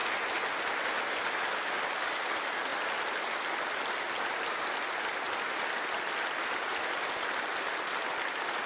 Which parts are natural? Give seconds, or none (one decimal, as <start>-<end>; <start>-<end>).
0.0-8.7